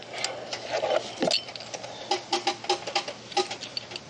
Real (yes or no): yes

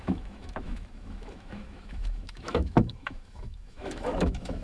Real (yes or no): no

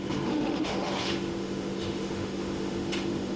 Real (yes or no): no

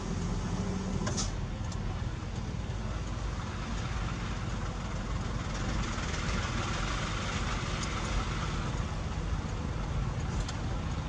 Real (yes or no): yes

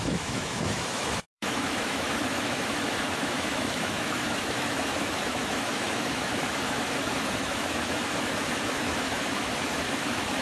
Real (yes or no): no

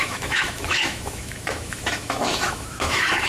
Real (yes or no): no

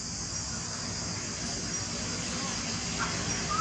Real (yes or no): yes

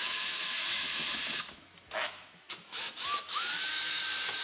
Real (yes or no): no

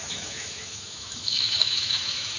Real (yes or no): no